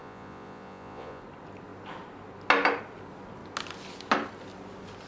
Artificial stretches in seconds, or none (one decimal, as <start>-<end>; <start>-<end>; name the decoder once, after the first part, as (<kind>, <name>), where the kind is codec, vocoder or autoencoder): 0.0-1.2 (vocoder, Vocos)